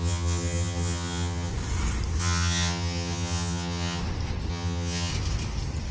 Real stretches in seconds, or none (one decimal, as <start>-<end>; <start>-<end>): 1.5-2.2; 4.0-4.5; 5.1-5.9